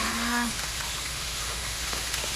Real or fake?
fake